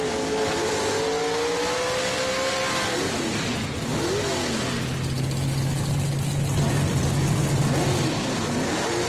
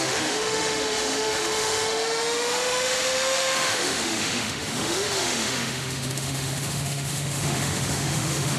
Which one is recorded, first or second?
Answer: first